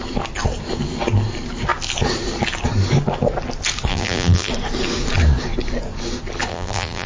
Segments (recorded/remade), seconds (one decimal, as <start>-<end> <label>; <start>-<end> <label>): 0.0-3.9 recorded; 3.9-4.5 remade; 4.5-6.5 recorded; 6.5-7.1 remade